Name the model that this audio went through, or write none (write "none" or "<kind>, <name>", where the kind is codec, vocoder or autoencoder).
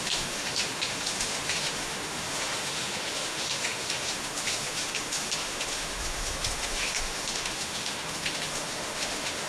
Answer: autoencoder, DAC-VAE